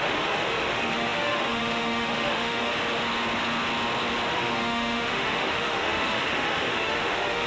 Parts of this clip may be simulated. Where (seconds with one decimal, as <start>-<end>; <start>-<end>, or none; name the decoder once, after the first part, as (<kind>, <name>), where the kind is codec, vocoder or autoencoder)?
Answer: 0.0-2.7 (autoencoder, DAC-VAE); 4.3-7.5